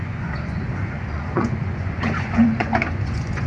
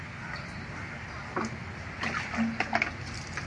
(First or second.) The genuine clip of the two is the second